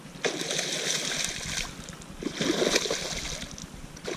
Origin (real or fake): real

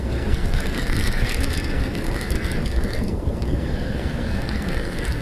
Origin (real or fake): fake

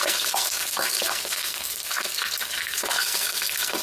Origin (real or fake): fake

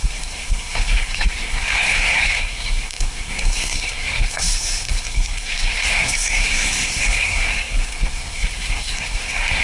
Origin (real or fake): fake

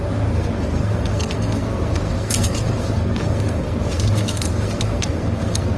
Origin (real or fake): fake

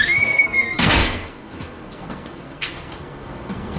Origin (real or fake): fake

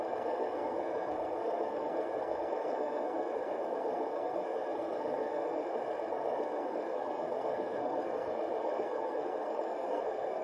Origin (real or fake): fake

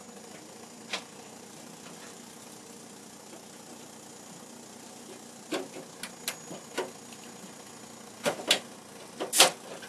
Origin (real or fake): real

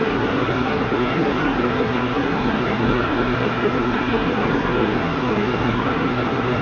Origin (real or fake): fake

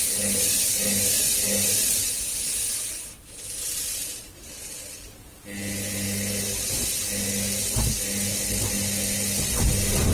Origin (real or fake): real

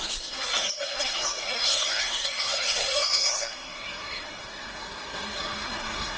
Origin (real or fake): fake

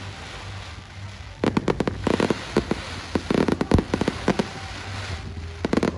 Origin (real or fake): real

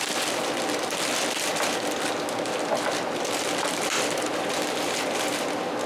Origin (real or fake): real